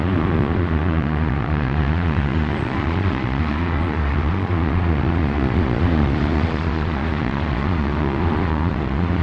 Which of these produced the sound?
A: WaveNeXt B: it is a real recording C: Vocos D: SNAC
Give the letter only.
C